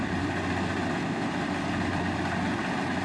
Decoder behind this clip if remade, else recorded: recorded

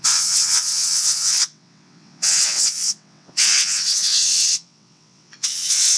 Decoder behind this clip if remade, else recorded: remade, vocoder, WaveNeXt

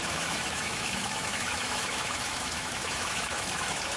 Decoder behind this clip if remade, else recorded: remade, autoencoder, DAC-VAE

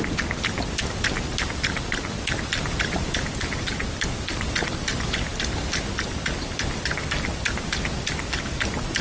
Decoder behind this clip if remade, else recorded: recorded